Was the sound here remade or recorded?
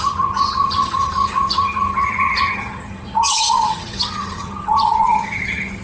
remade